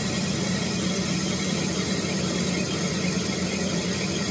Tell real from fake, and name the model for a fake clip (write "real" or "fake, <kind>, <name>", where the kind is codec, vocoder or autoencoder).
fake, vocoder, BigVGAN v2